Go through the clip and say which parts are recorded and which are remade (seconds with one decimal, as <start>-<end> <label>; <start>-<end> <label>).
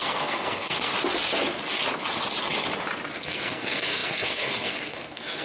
0.0-0.9 remade; 0.9-3.2 recorded; 3.2-5.4 remade